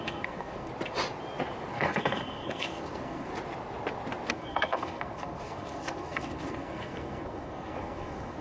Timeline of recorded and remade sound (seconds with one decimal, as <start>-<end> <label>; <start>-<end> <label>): 0.0-0.7 remade; 0.7-1.7 recorded; 1.7-3.3 remade; 3.3-4.3 recorded; 4.3-8.4 remade